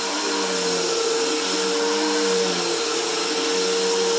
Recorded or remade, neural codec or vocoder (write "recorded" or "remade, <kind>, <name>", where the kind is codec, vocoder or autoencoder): recorded